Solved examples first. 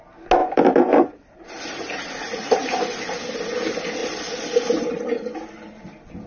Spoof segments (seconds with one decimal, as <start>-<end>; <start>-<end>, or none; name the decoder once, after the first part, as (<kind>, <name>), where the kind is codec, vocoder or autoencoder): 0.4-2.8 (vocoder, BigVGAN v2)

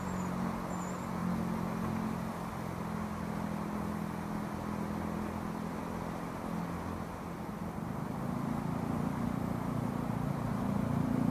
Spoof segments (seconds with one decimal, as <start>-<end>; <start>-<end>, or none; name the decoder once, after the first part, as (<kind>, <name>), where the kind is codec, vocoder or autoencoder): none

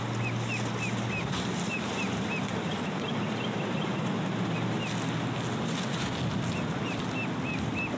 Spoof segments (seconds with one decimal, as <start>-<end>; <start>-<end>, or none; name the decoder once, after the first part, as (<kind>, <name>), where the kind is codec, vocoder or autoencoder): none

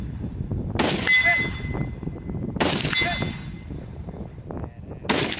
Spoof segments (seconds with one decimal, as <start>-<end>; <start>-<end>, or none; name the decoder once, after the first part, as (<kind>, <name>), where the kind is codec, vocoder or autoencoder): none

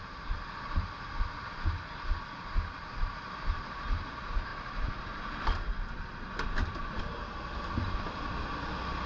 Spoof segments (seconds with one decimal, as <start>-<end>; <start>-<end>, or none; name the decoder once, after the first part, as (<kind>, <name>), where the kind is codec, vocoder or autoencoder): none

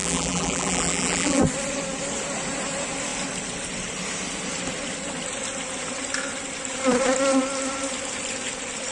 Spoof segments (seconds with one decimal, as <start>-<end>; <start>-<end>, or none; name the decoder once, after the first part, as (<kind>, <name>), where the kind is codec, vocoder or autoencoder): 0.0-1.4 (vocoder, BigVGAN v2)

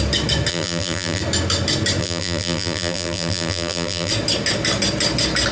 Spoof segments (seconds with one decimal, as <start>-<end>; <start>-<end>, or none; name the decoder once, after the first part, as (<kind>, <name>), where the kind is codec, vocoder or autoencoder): 0.5-1.2 (vocoder, BigVGAN v2); 2.0-4.1

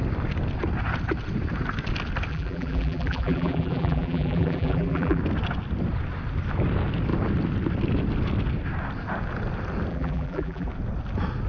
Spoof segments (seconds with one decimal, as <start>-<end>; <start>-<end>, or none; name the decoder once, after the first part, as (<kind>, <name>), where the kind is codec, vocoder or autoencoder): 2.3-5.2 (vocoder, BigVGAN v2); 9.9-10.7